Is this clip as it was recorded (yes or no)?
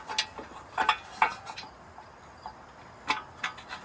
yes